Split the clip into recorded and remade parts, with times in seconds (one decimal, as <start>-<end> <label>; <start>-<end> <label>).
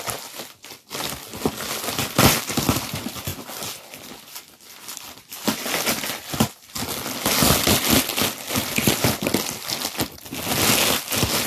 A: 0.0-11.5 recorded